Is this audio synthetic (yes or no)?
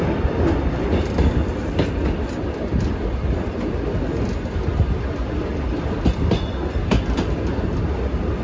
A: no